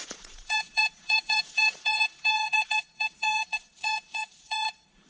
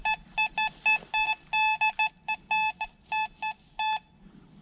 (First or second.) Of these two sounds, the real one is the second